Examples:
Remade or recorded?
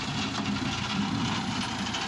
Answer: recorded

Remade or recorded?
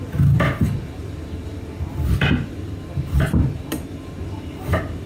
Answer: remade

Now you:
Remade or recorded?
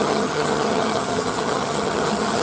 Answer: remade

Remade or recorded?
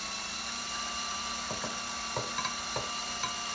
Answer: remade